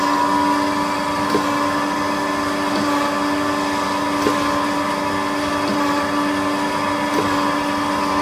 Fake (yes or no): no